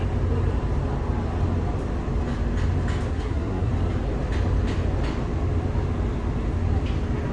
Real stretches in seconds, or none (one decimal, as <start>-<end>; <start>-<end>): 0.0-3.1; 3.7-7.3